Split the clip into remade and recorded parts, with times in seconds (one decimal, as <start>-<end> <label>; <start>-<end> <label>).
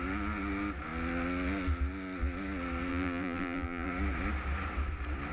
0.0-2.9 recorded; 2.9-3.9 remade; 3.9-5.3 recorded